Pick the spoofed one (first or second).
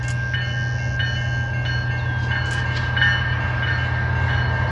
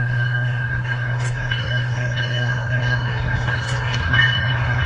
second